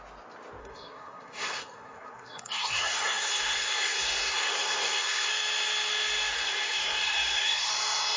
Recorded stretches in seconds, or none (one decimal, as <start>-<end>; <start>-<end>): 0.0-0.6; 5.3-6.3; 7.7-8.2